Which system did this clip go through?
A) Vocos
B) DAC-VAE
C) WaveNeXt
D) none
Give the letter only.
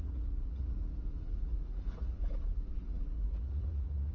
A